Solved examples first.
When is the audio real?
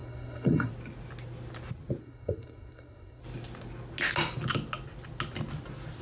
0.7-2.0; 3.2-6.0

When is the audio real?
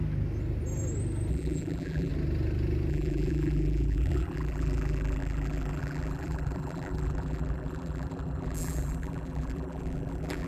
0.0-1.3; 2.1-2.9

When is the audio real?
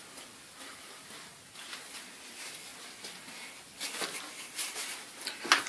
0.0-5.7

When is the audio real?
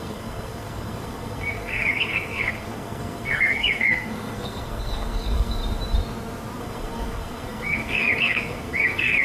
5.6-6.6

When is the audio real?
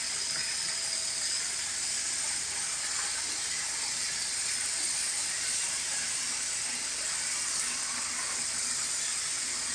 0.0-5.1; 6.2-9.7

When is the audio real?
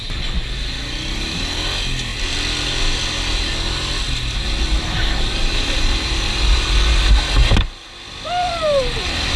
0.0-7.4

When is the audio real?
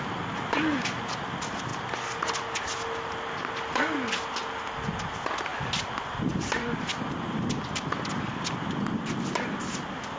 0.0-10.2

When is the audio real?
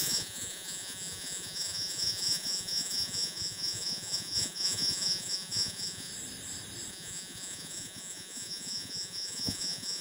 6.1-6.9